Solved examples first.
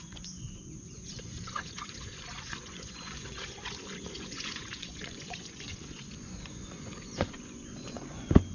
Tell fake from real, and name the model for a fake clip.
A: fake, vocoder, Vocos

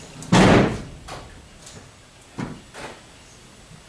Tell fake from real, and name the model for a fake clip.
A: real